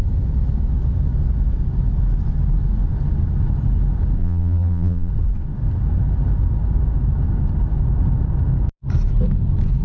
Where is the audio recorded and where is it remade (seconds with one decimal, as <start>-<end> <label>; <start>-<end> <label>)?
0.0-4.2 recorded; 4.2-5.1 remade; 5.1-9.8 recorded